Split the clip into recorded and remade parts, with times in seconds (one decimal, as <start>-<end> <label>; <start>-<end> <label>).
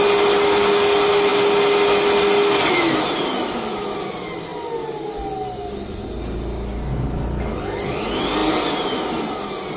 0.0-9.8 recorded